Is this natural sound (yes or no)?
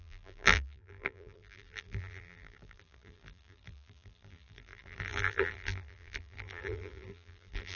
no